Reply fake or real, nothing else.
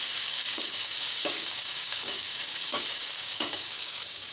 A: fake